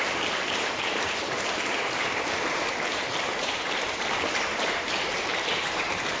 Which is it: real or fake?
fake